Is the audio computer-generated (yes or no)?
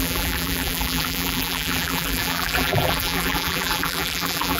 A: yes